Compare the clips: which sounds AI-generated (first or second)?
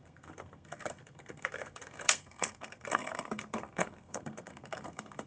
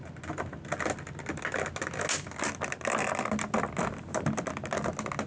first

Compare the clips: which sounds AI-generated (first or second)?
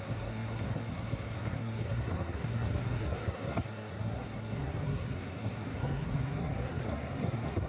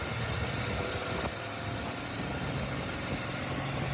first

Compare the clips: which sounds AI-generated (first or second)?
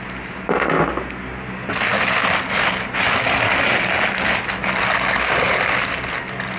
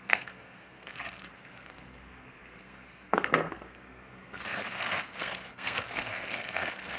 second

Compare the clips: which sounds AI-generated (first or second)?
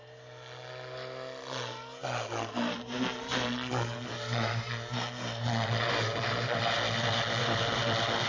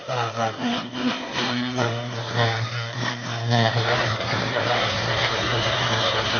second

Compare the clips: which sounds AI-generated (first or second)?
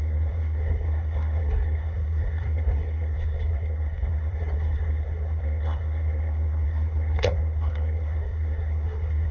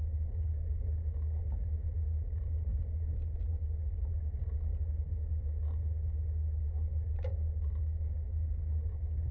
first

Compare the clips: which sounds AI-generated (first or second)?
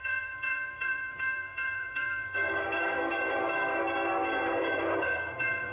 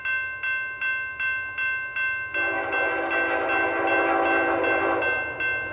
first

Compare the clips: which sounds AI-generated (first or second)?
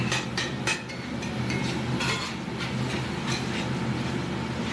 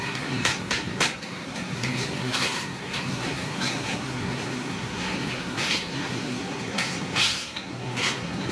second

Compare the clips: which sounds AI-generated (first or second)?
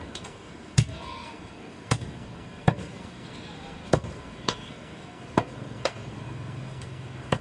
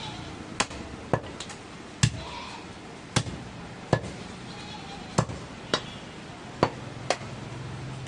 first